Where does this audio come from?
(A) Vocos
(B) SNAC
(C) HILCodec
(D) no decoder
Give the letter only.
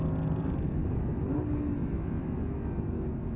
D